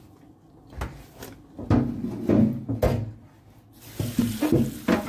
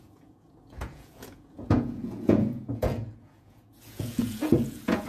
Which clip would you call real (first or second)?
first